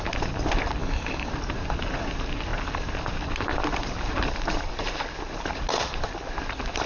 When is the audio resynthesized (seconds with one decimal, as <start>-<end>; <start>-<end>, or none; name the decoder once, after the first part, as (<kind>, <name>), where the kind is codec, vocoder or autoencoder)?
0.8-1.3 (codec, DAC)

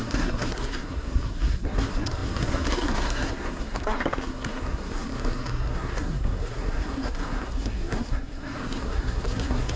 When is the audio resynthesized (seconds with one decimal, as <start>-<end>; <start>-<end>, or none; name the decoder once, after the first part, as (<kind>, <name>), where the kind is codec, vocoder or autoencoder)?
0.0-9.8 (codec, SNAC)

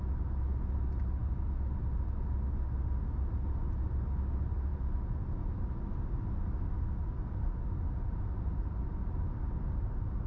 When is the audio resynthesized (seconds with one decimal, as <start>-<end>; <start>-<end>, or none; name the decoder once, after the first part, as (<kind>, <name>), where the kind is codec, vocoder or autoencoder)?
none

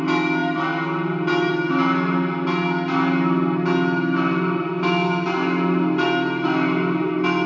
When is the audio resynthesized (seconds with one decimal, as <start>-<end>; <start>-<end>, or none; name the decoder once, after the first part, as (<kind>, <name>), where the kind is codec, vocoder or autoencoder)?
none